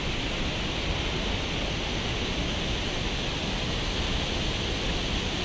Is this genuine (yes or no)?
yes